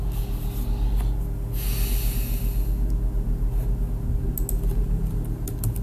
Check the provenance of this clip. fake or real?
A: real